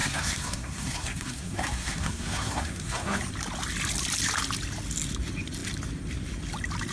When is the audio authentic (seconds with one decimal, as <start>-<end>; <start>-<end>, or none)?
3.2-6.9